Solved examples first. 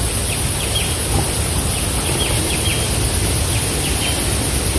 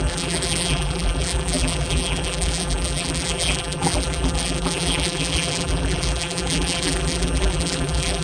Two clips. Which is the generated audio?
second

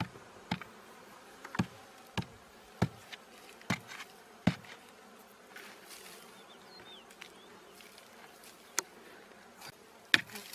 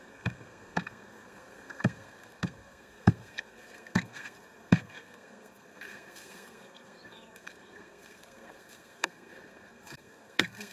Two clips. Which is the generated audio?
second